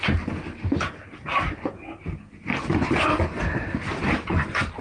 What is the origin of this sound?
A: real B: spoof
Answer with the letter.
A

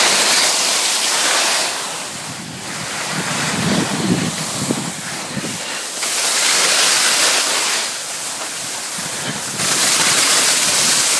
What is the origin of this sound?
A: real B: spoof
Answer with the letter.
A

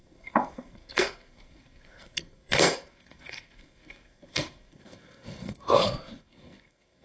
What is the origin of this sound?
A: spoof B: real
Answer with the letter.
A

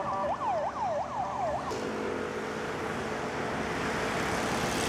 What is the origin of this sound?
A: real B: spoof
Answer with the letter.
A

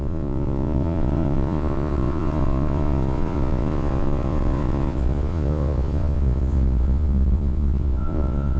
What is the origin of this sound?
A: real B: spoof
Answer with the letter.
B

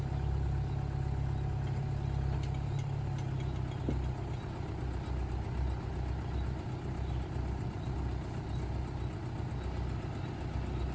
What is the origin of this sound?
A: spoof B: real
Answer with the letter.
B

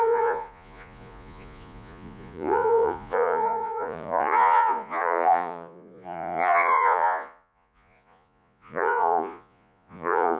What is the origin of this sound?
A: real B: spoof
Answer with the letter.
B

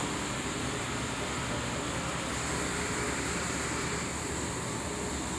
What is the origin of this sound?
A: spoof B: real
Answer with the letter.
B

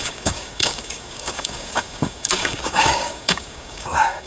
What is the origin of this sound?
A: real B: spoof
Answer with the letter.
B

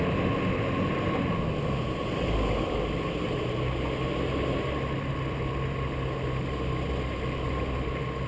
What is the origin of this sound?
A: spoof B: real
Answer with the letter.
B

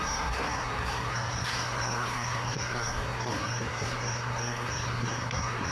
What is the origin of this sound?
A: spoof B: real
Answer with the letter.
A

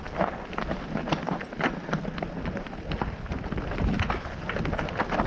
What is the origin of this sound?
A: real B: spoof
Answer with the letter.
A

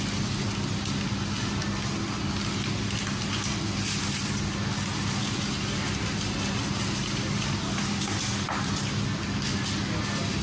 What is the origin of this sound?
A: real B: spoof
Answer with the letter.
A